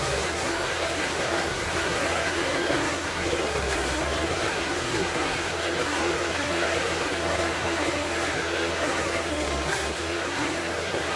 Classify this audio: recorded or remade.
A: remade